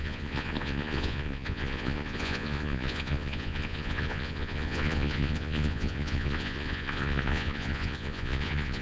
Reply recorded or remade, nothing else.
remade